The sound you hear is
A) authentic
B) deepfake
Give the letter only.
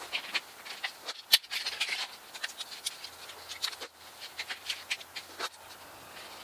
A